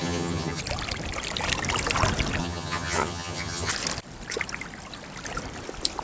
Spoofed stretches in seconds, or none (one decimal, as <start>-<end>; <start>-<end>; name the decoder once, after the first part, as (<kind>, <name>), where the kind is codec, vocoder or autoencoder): 0.0-0.6 (vocoder, HiFi-GAN); 2.4-3.7